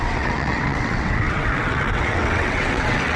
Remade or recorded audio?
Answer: remade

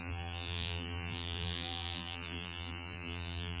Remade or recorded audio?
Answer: remade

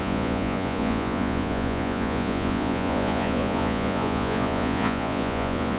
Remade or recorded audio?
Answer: remade